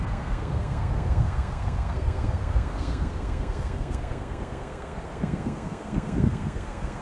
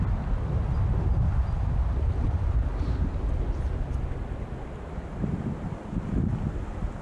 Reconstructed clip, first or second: first